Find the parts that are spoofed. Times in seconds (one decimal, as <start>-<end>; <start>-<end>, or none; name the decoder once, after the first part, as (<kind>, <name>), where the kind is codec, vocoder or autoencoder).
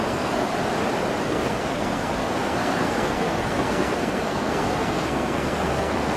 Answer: 0.0-0.5 (codec, SNAC); 1.2-6.2